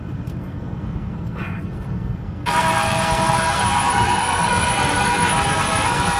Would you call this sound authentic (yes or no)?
no